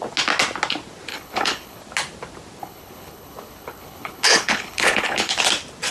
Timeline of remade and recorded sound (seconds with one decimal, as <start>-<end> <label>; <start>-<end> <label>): 0.0-1.1 recorded; 1.1-1.8 remade; 1.8-2.6 recorded; 2.6-5.4 remade; 5.4-5.9 recorded